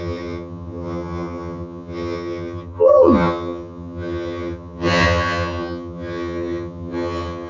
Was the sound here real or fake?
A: fake